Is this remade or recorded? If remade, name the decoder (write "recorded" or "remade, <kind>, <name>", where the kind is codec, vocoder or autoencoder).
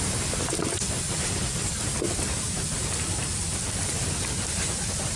recorded